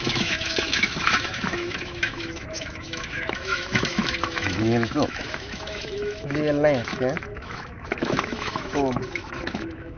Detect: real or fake fake